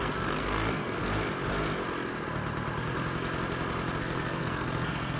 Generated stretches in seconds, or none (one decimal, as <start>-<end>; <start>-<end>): 0.0-1.0; 4.0-5.2